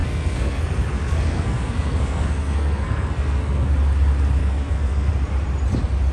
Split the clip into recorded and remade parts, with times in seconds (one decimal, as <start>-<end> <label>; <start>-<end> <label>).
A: 0.0-3.7 remade; 3.7-4.4 recorded; 4.4-5.1 remade; 5.1-6.1 recorded